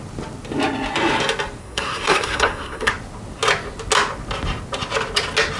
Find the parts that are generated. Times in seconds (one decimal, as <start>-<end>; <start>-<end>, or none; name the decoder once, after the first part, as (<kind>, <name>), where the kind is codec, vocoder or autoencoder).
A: 1.6-2.9 (codec, SNAC)